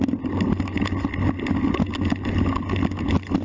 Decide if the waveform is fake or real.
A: real